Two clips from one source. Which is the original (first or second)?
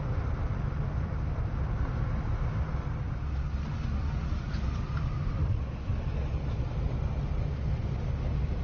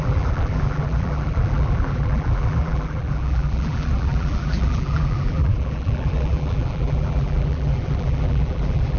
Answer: first